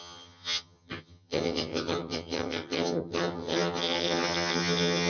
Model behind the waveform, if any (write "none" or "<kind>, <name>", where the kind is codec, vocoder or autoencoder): vocoder, HiFi-GAN